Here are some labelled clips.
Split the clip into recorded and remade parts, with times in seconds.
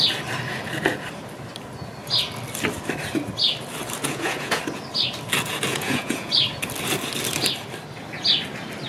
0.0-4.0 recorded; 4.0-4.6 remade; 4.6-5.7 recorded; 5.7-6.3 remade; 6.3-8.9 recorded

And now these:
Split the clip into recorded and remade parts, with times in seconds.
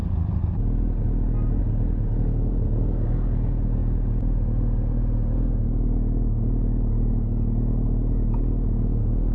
0.0-9.3 recorded